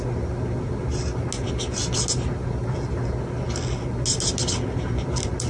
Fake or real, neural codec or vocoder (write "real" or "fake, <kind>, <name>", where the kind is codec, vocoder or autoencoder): real